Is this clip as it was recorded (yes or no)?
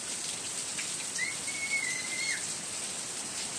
no